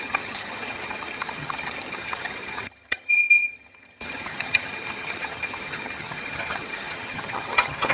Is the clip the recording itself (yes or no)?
no